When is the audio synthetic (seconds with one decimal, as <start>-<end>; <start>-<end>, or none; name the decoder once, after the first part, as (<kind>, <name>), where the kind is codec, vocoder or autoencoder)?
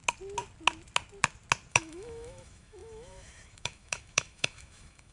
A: 1.7-5.1 (autoencoder, DAC-VAE)